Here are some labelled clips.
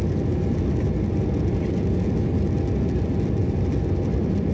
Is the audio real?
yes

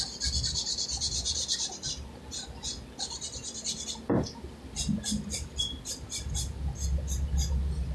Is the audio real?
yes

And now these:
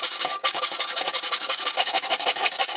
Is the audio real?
no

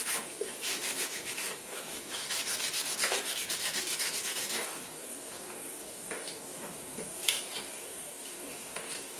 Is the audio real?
no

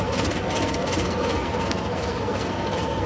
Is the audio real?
no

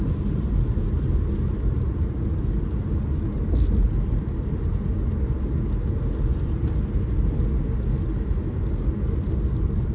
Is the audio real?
yes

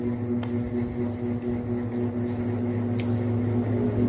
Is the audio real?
yes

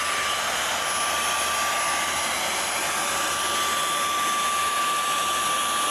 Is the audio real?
yes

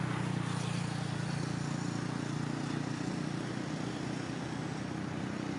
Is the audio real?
yes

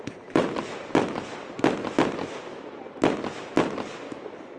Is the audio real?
yes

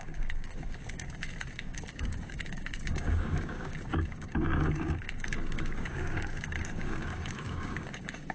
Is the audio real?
no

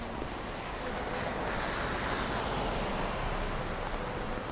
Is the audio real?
yes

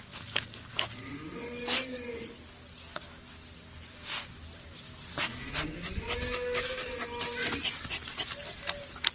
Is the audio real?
yes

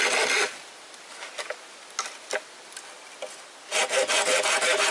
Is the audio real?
yes